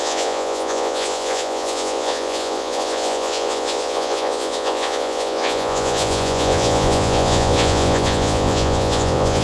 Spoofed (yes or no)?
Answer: yes